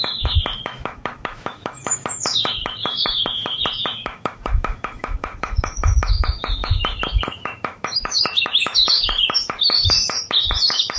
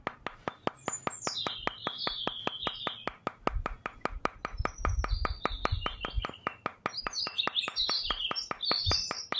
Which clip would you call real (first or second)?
second